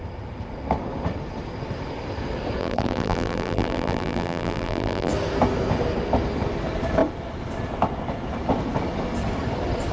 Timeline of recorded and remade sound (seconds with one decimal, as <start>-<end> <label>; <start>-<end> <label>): 0.0-2.6 recorded; 2.6-5.1 remade; 5.1-9.9 recorded